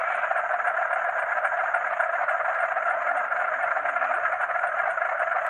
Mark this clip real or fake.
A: real